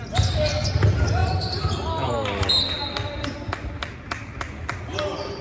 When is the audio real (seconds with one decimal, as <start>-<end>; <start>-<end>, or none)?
0.0-5.4